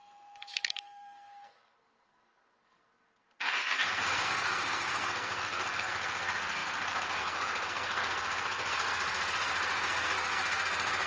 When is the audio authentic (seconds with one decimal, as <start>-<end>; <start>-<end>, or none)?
none

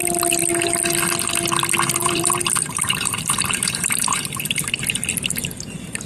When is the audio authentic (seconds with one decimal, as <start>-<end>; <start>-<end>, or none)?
0.0-2.0; 4.8-6.1

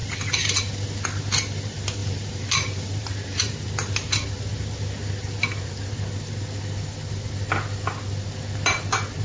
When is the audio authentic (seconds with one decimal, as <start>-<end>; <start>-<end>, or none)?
0.0-2.0; 3.7-9.2